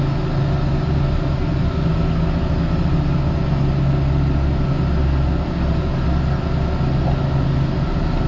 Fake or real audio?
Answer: real